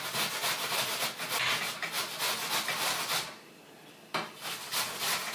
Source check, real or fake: real